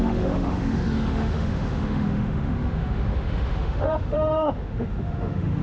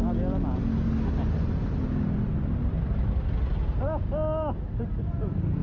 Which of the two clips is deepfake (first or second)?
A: first